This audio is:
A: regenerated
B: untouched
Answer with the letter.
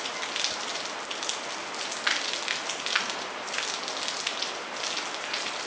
B